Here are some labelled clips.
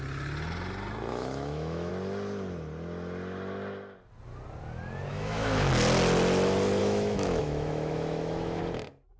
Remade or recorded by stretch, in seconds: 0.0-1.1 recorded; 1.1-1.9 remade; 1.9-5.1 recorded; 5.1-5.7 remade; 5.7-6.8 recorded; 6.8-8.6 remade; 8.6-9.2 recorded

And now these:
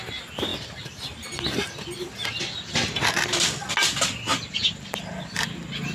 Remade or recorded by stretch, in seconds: 0.0-5.9 recorded

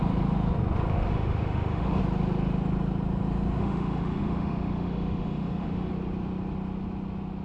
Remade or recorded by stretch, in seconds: 0.0-1.1 recorded; 1.1-2.0 remade; 2.0-3.6 recorded; 3.6-5.9 remade; 5.9-7.4 recorded

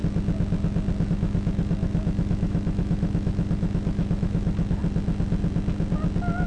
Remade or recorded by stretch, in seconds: 0.0-1.1 recorded; 1.1-4.8 remade; 4.8-6.5 recorded

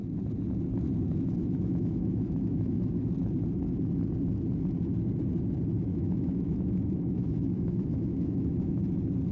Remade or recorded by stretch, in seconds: 0.0-1.4 recorded; 1.4-3.1 remade; 3.1-5.9 recorded; 5.9-8.8 remade; 8.8-9.3 recorded

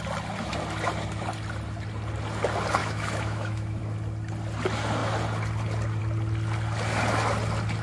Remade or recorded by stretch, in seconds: 0.0-2.8 recorded; 2.8-3.8 remade; 3.8-7.8 recorded

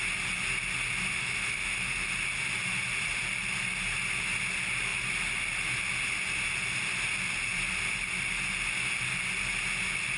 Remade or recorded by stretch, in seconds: 0.0-1.1 recorded; 1.1-2.1 remade; 2.1-10.2 recorded